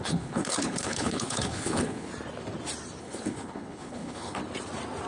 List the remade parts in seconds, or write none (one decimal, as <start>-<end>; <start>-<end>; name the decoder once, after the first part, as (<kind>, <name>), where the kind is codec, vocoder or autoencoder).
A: 0.0-2.1 (codec, HILCodec); 3.0-4.4